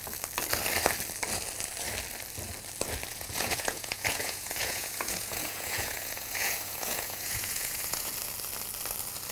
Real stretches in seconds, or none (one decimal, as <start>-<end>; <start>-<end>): 0.0-3.1; 8.1-9.3